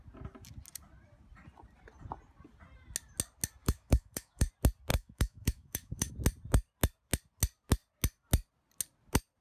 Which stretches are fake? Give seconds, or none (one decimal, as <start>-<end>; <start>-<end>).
3.6-4.5; 4.9-6.1